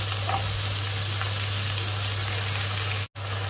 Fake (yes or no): no